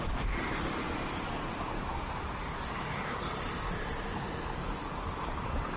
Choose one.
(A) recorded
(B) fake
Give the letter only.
B